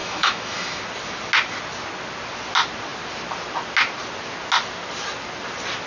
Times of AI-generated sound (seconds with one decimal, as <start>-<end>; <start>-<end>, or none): 0.0-0.8